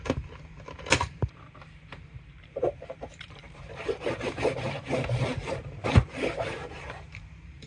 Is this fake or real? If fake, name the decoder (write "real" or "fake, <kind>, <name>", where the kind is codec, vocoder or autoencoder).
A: fake, vocoder, BigVGAN v2